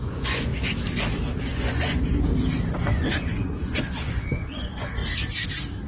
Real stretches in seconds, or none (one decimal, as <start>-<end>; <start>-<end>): 0.5-1.5; 2.1-2.7; 5.0-5.9